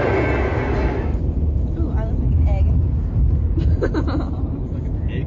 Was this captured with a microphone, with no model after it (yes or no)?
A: yes